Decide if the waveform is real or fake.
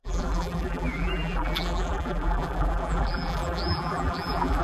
fake